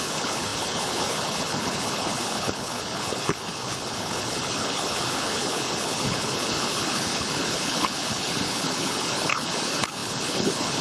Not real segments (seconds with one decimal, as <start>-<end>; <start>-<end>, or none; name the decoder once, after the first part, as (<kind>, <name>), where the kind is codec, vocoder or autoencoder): 0.0-10.8 (codec, HILCodec)